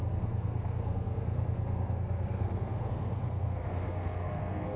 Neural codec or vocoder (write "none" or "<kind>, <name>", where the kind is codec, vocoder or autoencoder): codec, SNAC